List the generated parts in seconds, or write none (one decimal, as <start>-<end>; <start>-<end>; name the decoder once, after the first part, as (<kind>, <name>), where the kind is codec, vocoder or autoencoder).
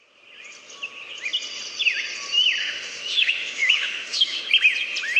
2.6-4.4 (autoencoder, DAC-VAE)